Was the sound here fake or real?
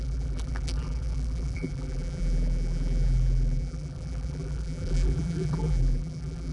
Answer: fake